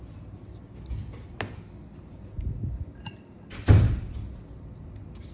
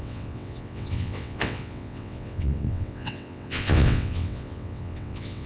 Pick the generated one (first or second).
second